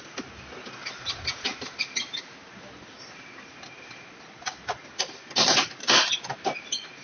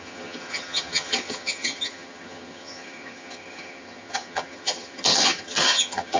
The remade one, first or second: second